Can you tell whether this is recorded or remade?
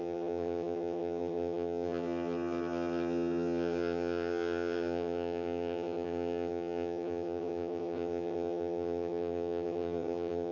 remade